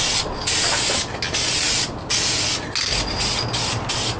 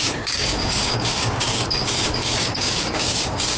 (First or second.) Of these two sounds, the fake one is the second